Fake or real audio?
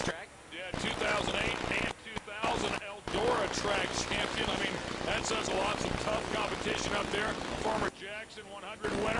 real